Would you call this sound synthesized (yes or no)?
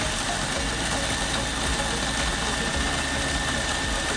no